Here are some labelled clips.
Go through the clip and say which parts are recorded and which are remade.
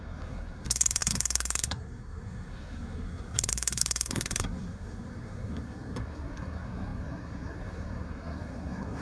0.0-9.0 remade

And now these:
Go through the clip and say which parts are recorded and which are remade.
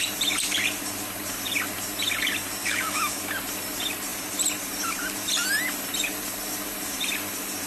0.0-2.6 recorded; 2.6-3.2 remade; 3.2-7.7 recorded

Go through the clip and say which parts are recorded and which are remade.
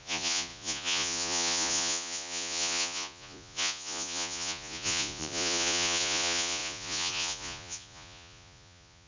0.0-9.1 remade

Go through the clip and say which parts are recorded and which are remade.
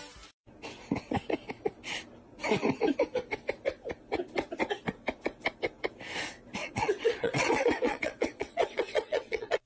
0.0-6.6 recorded; 6.6-9.7 remade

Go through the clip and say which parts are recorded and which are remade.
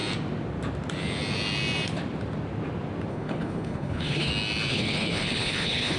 0.0-3.1 recorded; 3.1-4.3 remade; 4.3-4.7 recorded; 4.7-6.0 remade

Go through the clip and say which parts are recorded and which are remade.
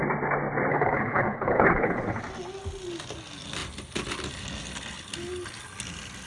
0.0-0.7 recorded; 0.7-2.2 remade; 2.2-6.3 recorded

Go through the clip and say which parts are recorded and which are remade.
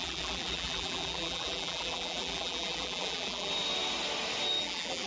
0.0-3.5 remade; 3.5-4.6 recorded; 4.6-5.1 remade